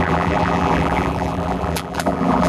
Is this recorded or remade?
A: remade